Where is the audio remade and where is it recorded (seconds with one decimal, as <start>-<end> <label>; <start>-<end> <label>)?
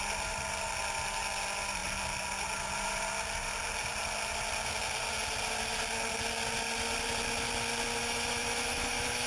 0.0-8.0 recorded; 8.0-9.3 remade